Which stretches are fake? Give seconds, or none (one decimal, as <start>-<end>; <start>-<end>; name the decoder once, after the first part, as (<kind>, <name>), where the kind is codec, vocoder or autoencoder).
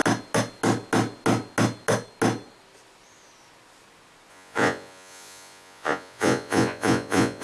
4.3-7.4 (vocoder, Vocos)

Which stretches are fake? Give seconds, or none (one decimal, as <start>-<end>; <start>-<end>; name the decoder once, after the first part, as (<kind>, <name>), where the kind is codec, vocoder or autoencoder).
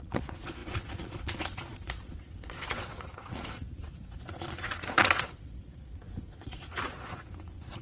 0.0-7.8 (vocoder, Vocos)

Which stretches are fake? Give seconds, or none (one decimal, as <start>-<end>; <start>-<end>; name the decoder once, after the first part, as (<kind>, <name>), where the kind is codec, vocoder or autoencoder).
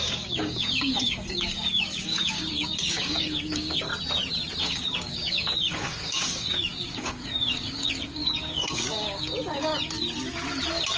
0.0-3.9 (codec, DAC); 4.6-9.7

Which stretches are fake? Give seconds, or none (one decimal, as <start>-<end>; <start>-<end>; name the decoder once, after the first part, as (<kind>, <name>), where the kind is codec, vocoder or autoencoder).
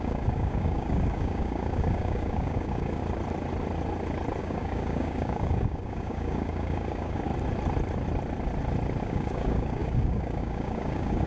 0.0-3.0 (codec, DAC); 4.4-7.3; 9.0-11.3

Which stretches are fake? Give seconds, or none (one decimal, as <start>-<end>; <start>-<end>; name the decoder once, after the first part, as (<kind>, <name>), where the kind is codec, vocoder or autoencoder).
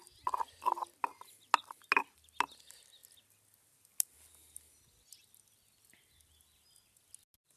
none